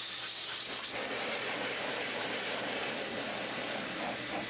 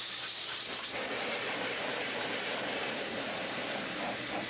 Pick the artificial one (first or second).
second